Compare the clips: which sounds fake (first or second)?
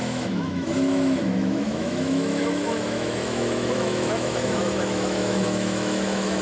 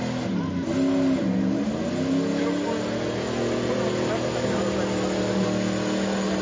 first